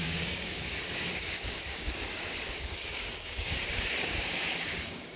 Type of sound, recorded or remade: remade